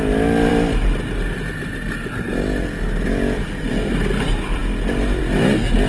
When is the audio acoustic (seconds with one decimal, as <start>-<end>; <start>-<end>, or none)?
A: 0.0-5.9